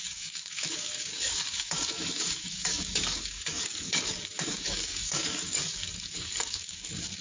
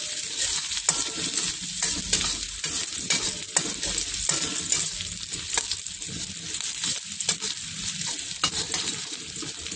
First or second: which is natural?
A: second